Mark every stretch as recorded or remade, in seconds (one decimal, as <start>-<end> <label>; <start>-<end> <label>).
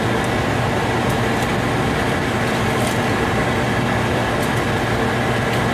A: 0.0-5.7 recorded